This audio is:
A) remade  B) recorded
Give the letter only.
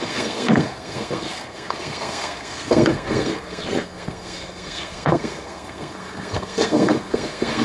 A